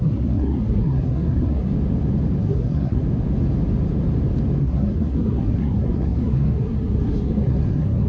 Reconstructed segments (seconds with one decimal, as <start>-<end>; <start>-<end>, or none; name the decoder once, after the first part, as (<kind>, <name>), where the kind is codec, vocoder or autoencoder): 0.0-1.7 (codec, SNAC); 2.4-3.0; 4.6-8.1